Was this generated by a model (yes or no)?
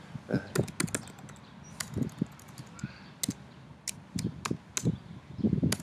no